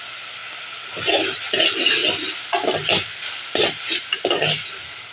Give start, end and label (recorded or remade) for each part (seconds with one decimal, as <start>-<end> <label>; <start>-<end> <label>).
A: 0.0-5.1 recorded